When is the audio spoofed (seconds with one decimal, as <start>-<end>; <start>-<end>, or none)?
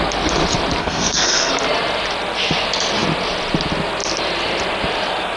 0.8-1.5